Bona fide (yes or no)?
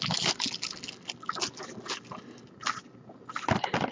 yes